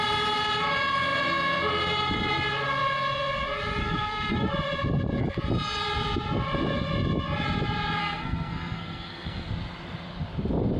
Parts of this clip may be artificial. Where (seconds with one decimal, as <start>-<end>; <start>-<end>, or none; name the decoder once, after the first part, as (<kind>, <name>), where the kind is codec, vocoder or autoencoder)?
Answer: 3.8-4.5 (codec, SNAC); 8.0-9.5